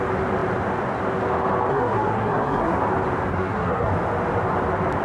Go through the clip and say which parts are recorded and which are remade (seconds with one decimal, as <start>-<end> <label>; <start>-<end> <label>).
0.0-1.7 recorded; 1.7-2.8 remade; 2.8-3.3 recorded; 3.3-3.9 remade; 3.9-5.0 recorded